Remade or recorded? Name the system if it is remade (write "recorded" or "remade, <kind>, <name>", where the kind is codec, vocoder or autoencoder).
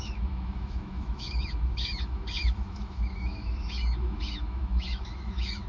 remade, autoencoder, DAC-VAE